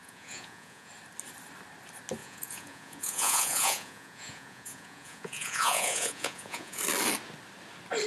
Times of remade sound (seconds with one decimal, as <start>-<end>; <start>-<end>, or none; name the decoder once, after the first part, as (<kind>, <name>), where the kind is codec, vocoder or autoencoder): 0.0-0.9 (vocoder, Vocos); 2.2-6.8